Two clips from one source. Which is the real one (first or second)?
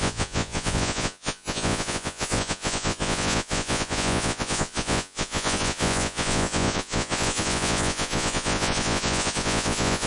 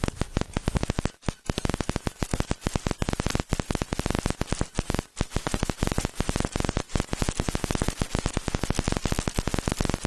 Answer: second